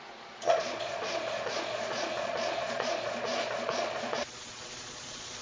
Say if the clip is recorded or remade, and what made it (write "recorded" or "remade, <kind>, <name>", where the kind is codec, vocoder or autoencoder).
remade, vocoder, Vocos